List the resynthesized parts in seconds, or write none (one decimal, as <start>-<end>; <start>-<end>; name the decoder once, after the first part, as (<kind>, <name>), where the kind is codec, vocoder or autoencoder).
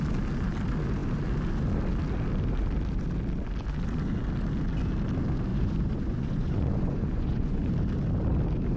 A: 5.5-7.7 (vocoder, Vocos)